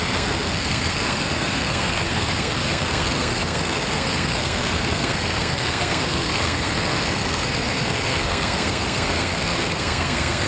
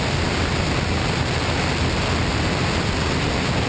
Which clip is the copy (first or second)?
first